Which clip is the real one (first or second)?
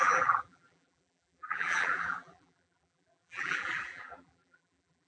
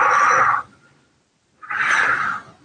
second